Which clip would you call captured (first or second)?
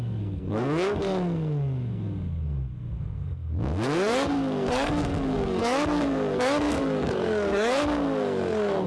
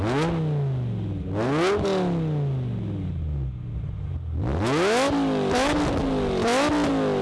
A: second